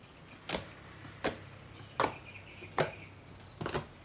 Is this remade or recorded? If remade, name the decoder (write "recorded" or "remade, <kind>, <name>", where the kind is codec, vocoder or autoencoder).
recorded